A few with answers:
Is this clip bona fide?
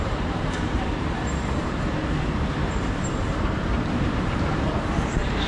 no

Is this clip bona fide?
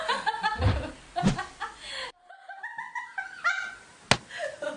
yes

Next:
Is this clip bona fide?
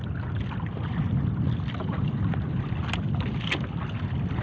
yes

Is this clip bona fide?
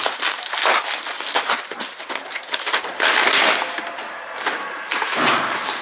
yes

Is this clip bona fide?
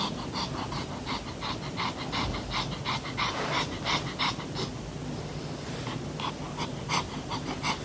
yes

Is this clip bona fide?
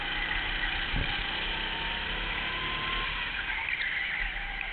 yes